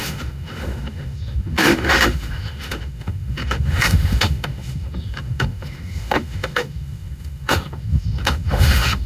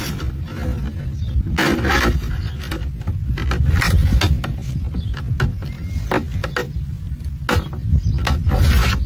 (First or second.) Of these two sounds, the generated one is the first